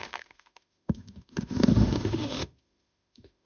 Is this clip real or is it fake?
fake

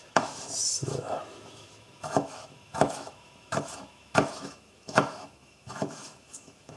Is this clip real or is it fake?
fake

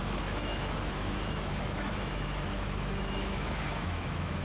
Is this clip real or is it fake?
fake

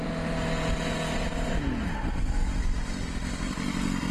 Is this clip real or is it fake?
real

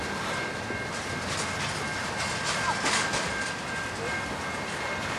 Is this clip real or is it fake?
real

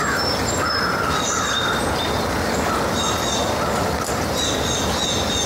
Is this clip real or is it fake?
real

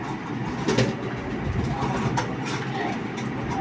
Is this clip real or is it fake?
real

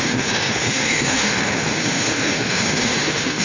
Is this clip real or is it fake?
fake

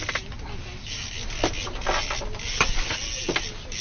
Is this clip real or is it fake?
real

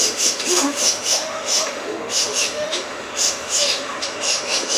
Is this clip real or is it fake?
fake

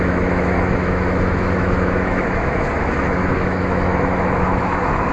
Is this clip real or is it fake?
fake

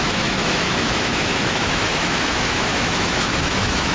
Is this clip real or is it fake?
fake